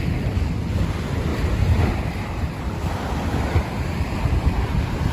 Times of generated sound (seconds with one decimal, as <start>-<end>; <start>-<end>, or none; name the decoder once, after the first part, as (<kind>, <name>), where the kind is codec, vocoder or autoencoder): 1.3-4.3 (vocoder, BigVGAN v2)